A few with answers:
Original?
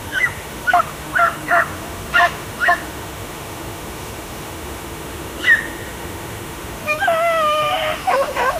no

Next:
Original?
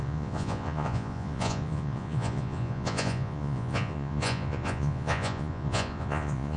no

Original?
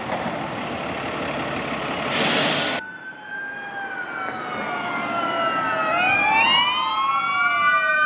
yes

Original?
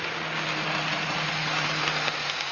yes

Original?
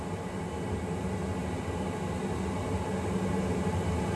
yes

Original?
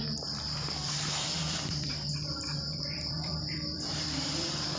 no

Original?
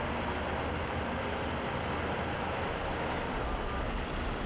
yes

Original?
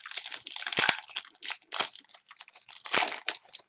yes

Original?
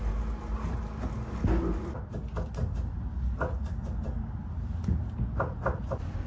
yes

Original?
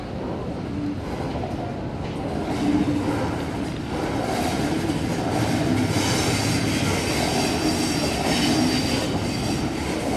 yes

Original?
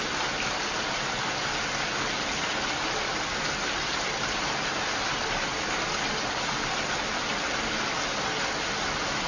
yes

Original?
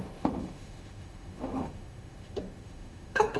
no